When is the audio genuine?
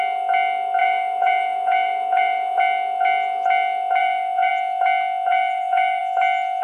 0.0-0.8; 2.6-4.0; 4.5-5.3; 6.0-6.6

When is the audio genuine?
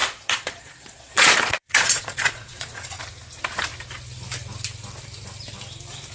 3.0-6.1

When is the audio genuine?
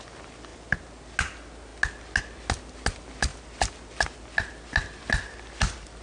0.0-6.0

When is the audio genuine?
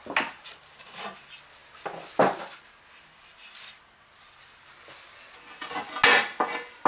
0.0-6.9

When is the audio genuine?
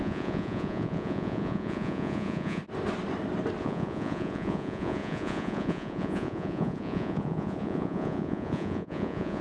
2.6-3.6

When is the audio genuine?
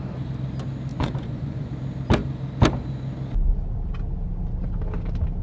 0.0-0.9; 1.7-5.4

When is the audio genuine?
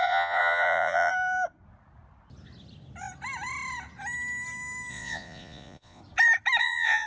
1.1-4.9; 6.0-6.6